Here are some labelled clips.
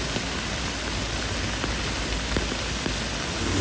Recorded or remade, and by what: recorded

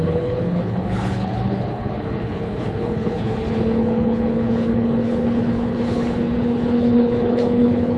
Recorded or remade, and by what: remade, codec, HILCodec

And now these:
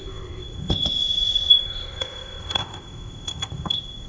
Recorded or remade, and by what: remade, codec, ZipCodec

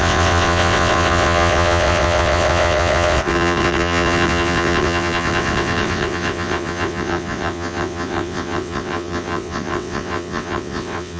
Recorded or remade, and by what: remade, vocoder, WaveNeXt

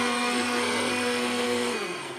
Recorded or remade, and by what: remade, codec, SNAC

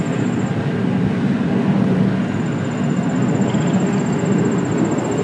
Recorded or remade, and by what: recorded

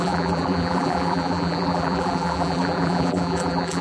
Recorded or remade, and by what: remade, vocoder, BigVGAN v2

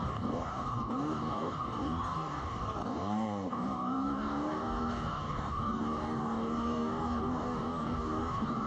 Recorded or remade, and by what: remade, codec, DAC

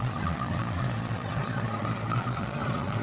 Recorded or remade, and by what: remade, vocoder, Vocos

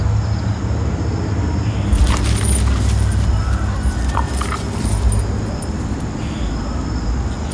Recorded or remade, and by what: recorded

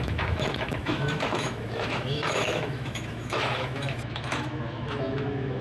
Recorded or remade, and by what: remade, autoencoder, DAC-VAE